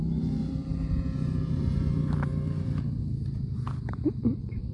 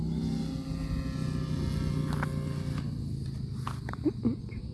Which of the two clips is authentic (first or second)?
second